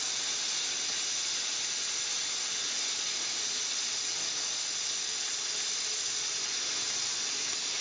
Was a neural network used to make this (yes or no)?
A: no